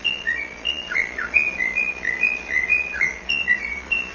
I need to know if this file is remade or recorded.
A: remade